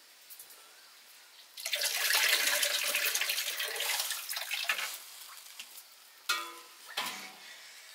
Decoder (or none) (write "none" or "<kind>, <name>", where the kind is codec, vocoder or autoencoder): none